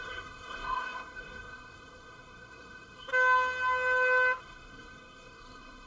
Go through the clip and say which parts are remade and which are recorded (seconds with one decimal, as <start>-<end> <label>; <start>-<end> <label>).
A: 0.0-3.1 remade; 3.1-4.4 recorded; 4.4-5.9 remade